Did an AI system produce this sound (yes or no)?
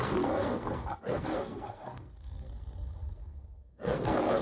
yes